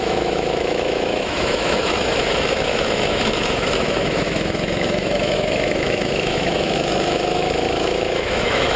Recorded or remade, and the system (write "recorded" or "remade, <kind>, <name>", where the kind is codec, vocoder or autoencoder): remade, autoencoder, DAC-VAE